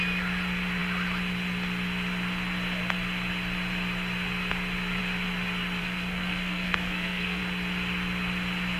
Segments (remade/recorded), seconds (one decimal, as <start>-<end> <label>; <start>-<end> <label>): 0.0-5.8 recorded; 5.8-7.4 remade; 7.4-8.8 recorded